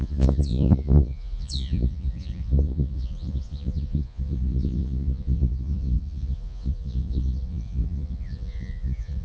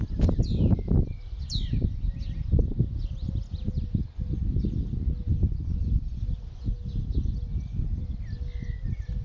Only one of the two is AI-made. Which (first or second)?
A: first